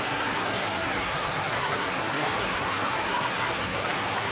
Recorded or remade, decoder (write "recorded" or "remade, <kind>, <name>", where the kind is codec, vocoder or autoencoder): remade, codec, SNAC